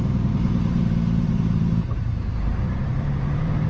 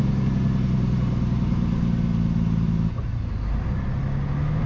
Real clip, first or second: second